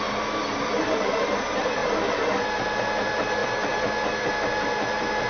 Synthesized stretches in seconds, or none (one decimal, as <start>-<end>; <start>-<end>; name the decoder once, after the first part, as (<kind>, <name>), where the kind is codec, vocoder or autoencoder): none